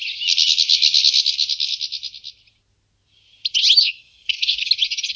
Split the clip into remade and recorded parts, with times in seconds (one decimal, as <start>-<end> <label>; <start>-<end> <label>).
0.0-3.8 recorded; 3.8-4.6 remade; 4.6-5.2 recorded